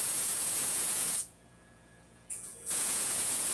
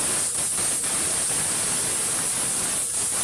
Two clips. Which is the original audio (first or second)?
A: second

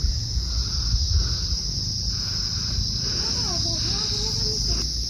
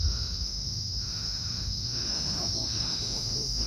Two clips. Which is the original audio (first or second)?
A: first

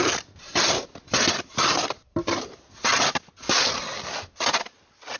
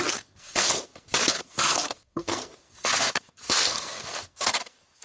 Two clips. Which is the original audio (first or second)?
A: first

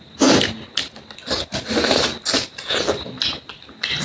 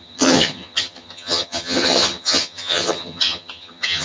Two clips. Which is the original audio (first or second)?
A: first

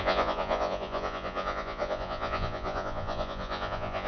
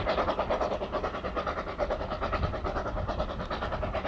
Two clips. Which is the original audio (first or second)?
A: second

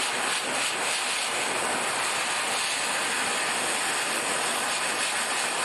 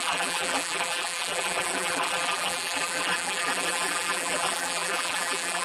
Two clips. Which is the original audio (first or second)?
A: first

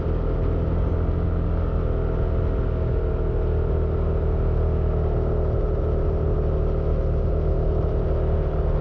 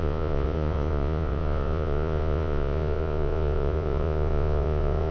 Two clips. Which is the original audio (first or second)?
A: first